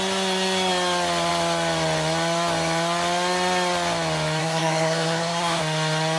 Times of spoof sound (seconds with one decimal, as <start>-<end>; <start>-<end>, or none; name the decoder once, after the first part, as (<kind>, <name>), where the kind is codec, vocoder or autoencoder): 4.4-5.6 (codec, SNAC)